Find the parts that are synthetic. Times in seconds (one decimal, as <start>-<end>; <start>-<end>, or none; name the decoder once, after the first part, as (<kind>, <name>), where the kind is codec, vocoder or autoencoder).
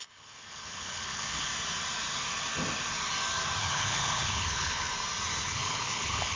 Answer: 0.0-1.5 (codec, HILCodec); 3.6-4.9; 5.4-6.4